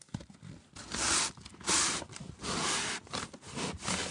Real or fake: real